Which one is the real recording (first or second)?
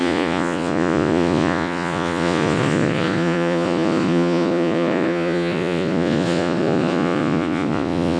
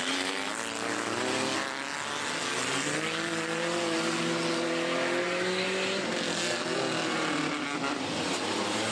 second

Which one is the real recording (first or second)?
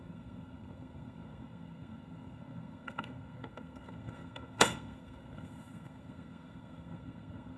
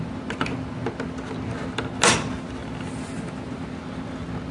second